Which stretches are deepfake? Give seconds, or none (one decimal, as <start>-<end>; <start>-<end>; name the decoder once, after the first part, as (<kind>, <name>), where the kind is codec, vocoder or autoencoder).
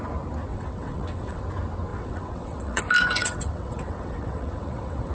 0.5-1.4 (vocoder, WaveNeXt); 1.9-2.8; 3.2-5.1